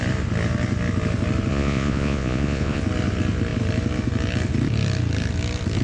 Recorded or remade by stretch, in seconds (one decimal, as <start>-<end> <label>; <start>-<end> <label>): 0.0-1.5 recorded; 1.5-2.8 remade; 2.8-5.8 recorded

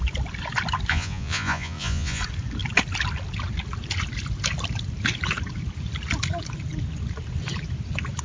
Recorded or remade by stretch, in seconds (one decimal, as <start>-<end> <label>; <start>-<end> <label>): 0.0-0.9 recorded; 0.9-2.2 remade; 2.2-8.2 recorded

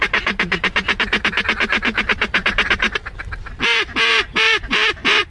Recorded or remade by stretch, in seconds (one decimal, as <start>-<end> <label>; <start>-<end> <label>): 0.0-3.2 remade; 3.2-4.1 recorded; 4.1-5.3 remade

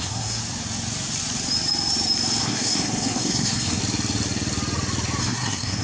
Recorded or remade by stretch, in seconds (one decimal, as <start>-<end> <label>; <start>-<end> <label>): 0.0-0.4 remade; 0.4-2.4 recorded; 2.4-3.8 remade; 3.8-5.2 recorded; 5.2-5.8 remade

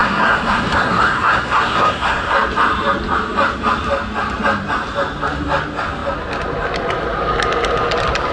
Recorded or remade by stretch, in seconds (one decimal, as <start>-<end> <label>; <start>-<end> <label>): 0.0-2.3 remade; 2.3-8.3 recorded